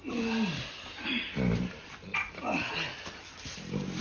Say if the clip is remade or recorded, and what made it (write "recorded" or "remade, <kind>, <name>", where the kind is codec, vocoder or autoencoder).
recorded